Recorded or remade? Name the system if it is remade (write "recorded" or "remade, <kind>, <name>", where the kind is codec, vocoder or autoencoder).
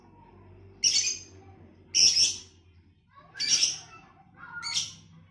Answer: recorded